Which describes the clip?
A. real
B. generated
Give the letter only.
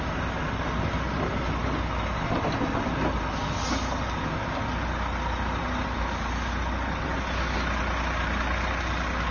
A